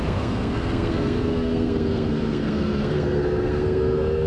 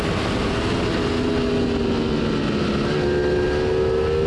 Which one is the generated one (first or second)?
first